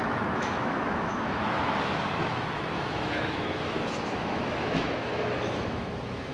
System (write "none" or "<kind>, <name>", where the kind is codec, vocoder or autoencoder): autoencoder, DAC-VAE